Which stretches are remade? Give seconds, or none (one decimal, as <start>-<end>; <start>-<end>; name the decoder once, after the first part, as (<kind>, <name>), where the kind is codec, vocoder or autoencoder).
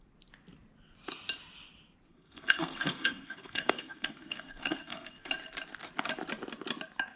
2.1-5.3 (codec, SNAC)